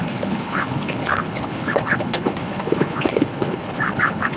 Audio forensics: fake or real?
fake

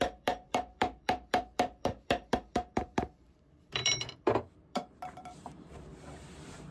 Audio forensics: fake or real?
fake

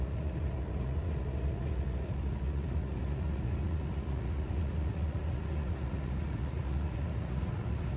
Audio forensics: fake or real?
fake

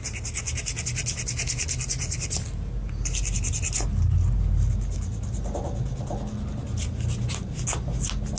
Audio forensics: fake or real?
real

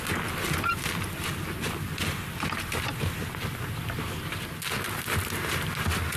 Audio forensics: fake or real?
real